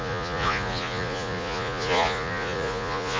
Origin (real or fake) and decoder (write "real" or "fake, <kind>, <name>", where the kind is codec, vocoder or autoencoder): fake, vocoder, Vocos